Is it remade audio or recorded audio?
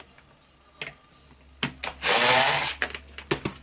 recorded